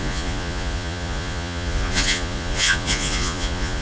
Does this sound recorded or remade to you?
remade